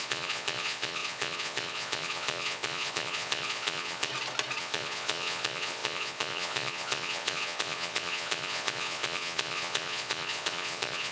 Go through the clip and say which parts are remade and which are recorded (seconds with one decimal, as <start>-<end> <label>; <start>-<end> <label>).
0.0-4.1 remade; 4.1-4.6 recorded; 4.6-11.1 remade